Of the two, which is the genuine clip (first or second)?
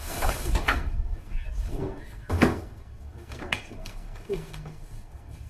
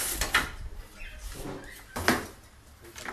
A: second